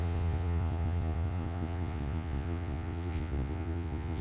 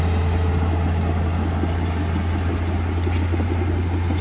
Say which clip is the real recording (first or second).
second